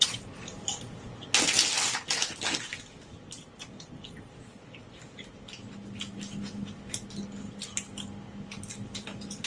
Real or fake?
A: real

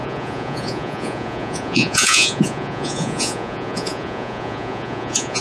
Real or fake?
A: fake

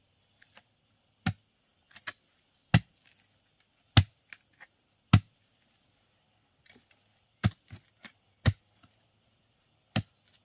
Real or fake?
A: real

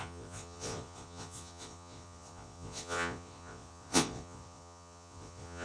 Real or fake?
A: fake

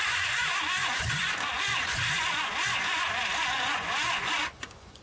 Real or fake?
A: fake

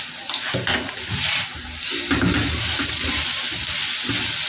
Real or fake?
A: real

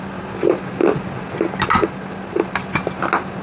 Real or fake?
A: real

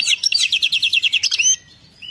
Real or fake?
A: real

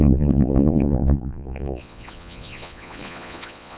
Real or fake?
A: fake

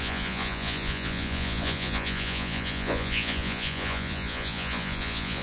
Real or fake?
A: fake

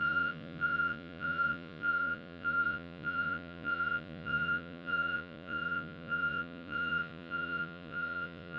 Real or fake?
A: fake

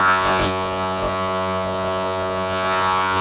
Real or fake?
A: fake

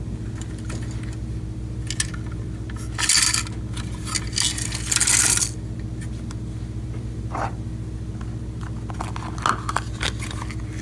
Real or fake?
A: real